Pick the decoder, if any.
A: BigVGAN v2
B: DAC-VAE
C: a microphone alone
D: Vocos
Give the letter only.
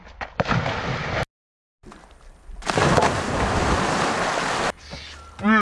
C